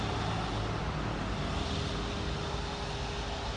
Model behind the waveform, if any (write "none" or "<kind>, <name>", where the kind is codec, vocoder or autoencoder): none